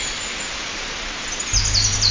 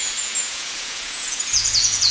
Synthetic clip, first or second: second